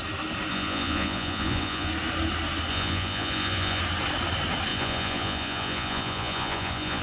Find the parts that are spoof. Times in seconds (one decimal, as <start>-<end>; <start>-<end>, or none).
0.5-1.9; 2.7-3.8; 4.7-7.0